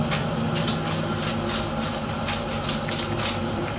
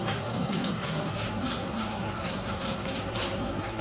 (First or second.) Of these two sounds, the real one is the first